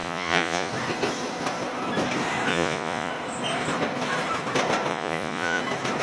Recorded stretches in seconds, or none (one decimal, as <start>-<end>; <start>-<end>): 0.7-2.5; 3.1-4.9; 5.6-6.0